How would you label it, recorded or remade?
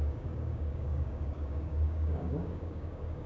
remade